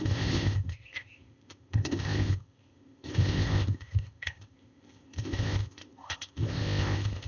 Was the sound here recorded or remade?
remade